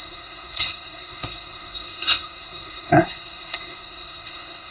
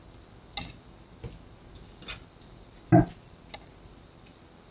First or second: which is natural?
second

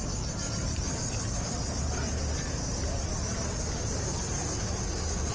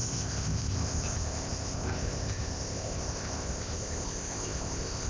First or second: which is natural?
first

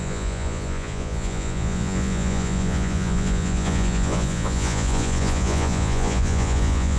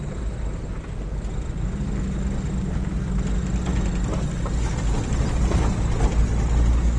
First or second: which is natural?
second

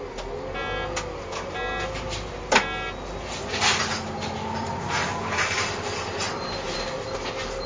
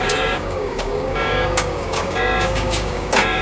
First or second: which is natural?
first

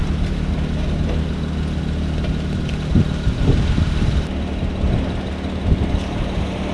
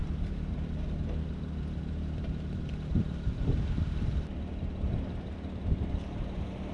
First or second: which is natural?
first